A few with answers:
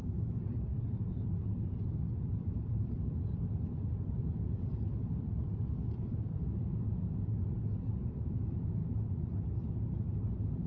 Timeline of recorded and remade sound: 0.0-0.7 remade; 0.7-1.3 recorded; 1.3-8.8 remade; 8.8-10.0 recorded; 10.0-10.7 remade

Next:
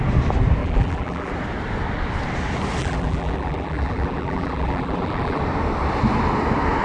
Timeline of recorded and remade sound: 0.0-0.6 recorded; 0.6-1.3 remade; 1.3-2.8 recorded; 2.8-5.4 remade; 5.4-6.8 recorded

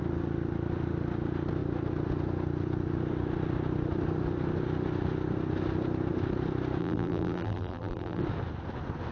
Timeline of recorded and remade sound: 0.0-6.8 recorded; 6.8-8.2 remade; 8.2-9.1 recorded

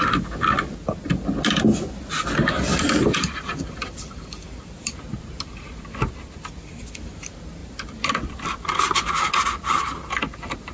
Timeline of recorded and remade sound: 0.0-2.7 recorded; 2.7-4.9 remade; 4.9-7.6 recorded; 7.6-9.1 remade; 9.1-10.7 recorded

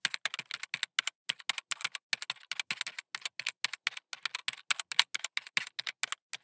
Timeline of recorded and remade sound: 0.0-6.4 recorded

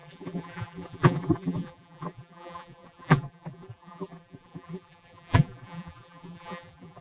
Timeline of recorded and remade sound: 0.0-7.0 remade